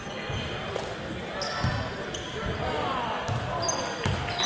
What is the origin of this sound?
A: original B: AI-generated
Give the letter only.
A